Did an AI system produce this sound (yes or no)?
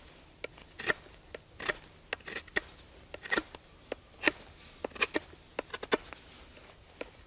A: no